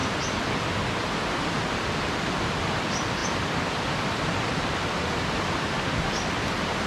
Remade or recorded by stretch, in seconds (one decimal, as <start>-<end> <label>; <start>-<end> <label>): 0.0-3.2 recorded; 3.2-4.7 remade; 4.7-6.9 recorded